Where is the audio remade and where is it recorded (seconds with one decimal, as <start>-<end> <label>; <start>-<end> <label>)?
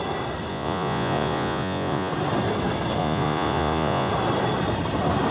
0.0-0.5 recorded; 0.5-2.1 remade; 2.1-3.0 recorded; 3.0-4.1 remade; 4.1-5.3 recorded